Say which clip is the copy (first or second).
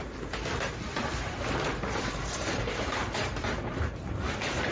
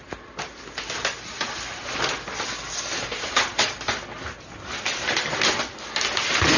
first